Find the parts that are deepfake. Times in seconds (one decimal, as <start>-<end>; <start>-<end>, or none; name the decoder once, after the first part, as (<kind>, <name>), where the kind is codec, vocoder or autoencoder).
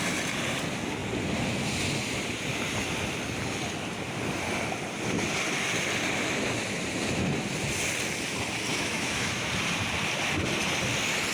8.7-9.5 (autoencoder, DAC-VAE)